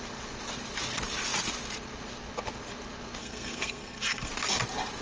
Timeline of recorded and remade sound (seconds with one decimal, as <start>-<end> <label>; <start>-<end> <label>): 0.0-3.2 recorded; 3.2-4.3 remade; 4.3-5.0 recorded